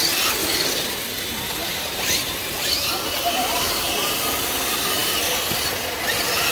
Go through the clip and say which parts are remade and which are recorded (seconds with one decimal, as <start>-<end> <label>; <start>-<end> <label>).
0.0-1.6 recorded; 1.6-4.2 remade; 4.2-6.5 recorded